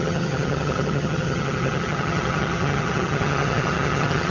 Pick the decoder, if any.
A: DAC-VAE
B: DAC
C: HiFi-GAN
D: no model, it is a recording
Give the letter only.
C